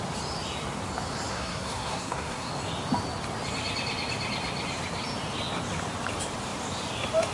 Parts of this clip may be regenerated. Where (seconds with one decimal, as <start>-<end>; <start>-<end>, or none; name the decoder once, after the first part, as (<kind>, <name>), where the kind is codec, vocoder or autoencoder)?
1.3-2.5 (codec, SNAC)